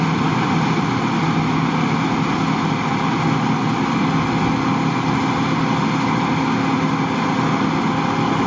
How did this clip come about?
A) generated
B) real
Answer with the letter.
B